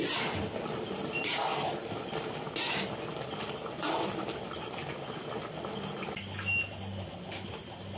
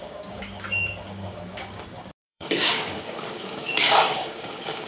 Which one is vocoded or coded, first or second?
second